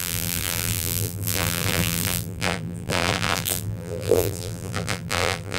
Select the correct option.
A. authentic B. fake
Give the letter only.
B